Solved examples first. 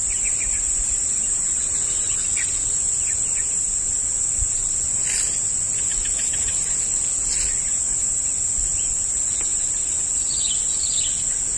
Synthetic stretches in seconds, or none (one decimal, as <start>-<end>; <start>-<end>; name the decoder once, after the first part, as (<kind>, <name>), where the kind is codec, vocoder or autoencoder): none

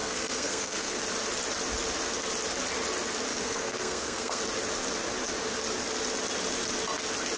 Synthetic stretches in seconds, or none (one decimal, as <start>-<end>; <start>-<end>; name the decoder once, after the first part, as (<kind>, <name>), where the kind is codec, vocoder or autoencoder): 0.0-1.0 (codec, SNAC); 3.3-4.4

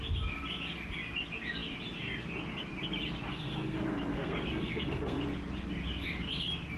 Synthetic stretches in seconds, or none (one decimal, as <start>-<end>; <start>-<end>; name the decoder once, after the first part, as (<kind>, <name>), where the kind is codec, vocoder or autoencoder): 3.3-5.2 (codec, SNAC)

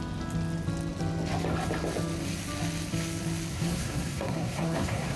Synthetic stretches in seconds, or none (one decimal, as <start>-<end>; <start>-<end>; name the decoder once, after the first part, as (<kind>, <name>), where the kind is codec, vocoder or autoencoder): 3.5-5.2 (codec, SNAC)